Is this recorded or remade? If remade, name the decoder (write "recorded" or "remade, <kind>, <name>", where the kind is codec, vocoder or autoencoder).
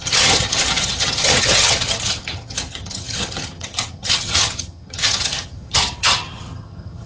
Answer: remade, vocoder, HiFi-GAN